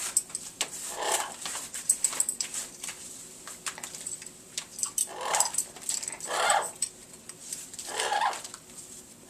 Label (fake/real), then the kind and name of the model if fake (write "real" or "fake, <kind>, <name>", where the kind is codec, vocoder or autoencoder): fake, vocoder, BigVGAN v2